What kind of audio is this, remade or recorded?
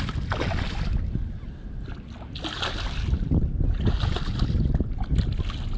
recorded